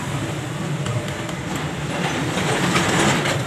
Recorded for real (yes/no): yes